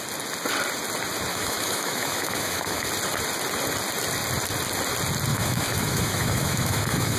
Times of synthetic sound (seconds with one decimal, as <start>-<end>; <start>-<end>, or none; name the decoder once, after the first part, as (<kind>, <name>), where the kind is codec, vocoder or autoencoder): 1.3-2.9 (autoencoder, DAC-VAE); 5.3-7.2